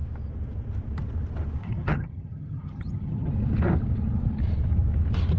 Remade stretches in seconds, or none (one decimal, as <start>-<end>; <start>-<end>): 1.6-3.3